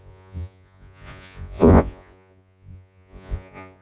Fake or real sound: fake